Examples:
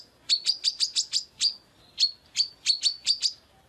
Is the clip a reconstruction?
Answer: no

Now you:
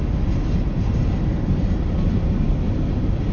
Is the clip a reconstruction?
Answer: no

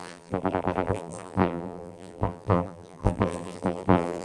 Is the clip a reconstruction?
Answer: yes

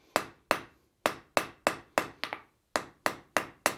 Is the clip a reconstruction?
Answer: no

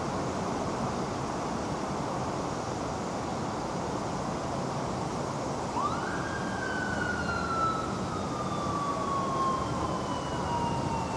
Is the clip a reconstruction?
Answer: no